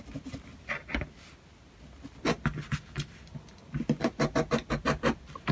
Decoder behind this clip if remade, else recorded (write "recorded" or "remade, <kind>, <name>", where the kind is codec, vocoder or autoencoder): recorded